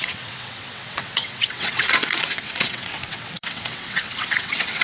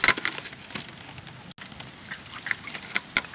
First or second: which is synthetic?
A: first